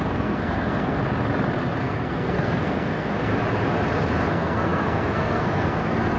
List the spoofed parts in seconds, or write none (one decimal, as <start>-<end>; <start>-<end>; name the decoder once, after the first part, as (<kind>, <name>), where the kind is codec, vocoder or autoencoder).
0.0-1.0 (codec, SNAC); 1.8-3.3; 4.3-6.2